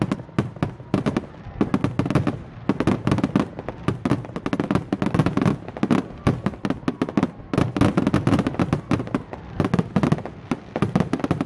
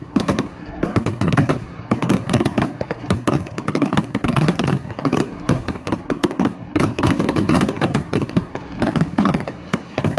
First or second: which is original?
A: first